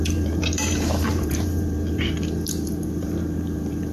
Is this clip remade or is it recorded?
remade